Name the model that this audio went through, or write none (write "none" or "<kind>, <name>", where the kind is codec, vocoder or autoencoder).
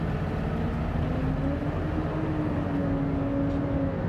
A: none